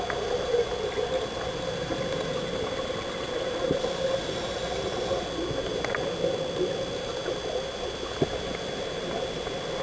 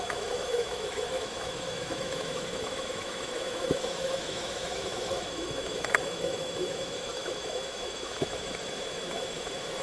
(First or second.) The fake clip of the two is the second